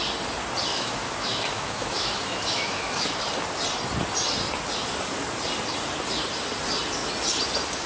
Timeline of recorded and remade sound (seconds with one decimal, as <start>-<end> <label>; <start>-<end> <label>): 0.0-0.7 recorded; 0.7-3.1 remade; 3.1-7.9 recorded